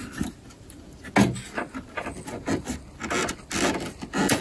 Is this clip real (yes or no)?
yes